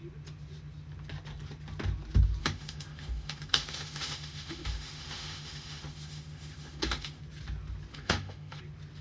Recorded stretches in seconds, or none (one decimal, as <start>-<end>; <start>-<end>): 0.0-2.4; 7.2-7.9; 8.6-9.0